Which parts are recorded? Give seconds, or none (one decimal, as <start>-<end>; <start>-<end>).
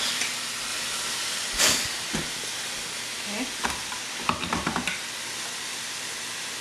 0.7-1.6